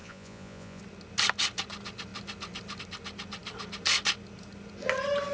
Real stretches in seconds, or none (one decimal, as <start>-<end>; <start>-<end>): 0.8-5.3